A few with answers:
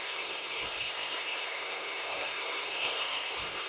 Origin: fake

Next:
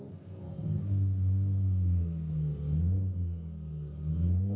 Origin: fake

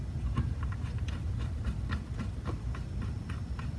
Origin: real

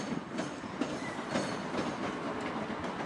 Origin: real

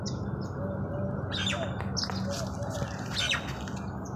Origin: real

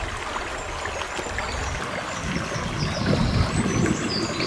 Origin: real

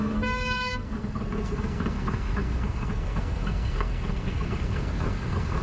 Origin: fake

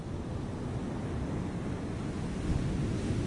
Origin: real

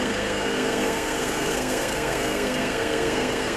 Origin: fake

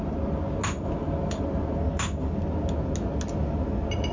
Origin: real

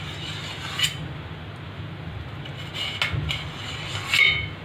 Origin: real